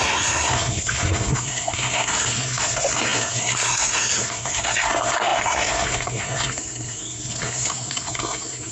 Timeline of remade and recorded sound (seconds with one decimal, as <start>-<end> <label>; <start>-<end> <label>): 0.0-8.7 remade